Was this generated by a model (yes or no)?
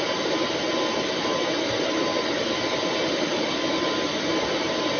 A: no